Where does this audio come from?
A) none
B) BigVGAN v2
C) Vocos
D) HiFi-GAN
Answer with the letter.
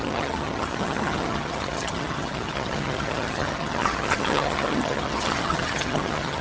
D